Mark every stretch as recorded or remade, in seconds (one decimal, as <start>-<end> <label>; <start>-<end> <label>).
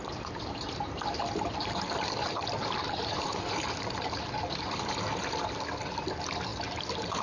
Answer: 0.0-7.2 remade